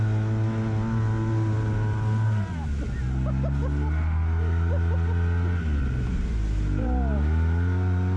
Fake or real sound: real